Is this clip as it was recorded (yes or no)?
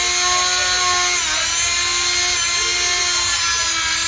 yes